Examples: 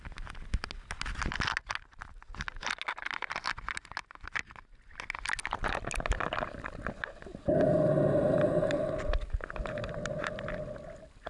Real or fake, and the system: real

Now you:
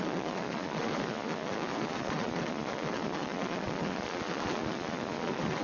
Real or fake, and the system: fake, vocoder, Vocos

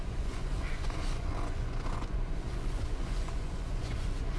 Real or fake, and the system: fake, vocoder, Vocos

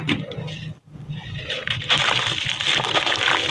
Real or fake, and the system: real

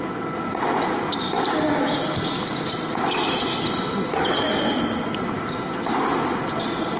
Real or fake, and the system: real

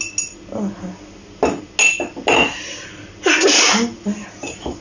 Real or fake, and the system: real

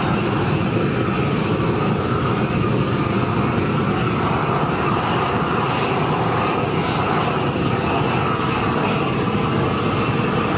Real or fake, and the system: real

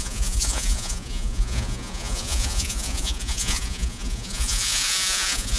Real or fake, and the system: fake, vocoder, Vocos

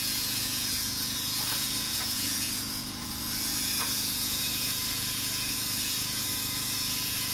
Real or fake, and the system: fake, vocoder, Vocos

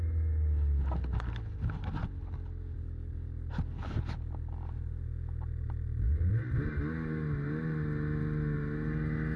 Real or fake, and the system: real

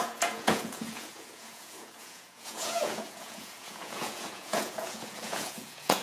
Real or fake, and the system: fake, vocoder, Vocos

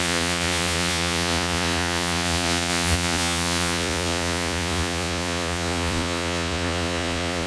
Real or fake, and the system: fake, vocoder, Vocos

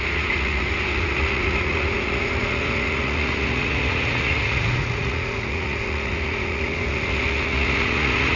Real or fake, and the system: fake, vocoder, Vocos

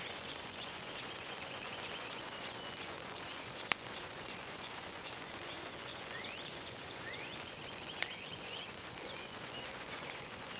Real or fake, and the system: fake, vocoder, Vocos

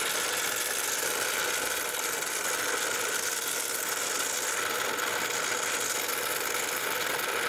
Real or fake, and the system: real